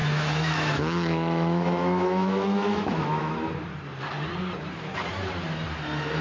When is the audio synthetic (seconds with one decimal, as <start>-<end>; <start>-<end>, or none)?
0.0-3.3